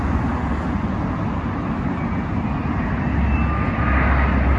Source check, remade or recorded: recorded